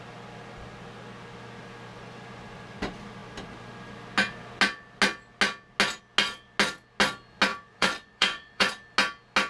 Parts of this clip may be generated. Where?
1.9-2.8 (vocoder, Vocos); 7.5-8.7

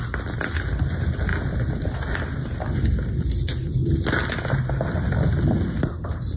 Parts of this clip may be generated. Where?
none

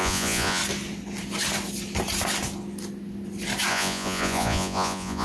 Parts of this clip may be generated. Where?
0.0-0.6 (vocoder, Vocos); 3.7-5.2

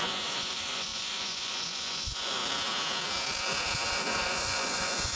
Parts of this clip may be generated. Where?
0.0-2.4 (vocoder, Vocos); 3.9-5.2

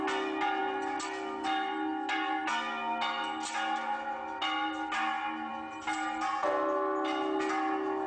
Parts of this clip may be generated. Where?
none

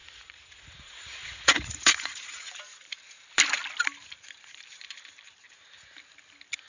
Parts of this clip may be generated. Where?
0.0-2.6 (vocoder, Vocos)